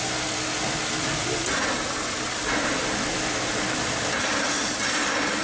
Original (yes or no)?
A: yes